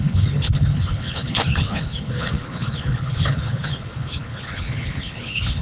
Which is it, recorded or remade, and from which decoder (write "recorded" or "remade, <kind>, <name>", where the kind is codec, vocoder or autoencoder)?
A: remade, codec, HILCodec